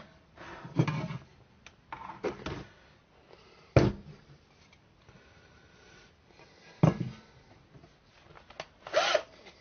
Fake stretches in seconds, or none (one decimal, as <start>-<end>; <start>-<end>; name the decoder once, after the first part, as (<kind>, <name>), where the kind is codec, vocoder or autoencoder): none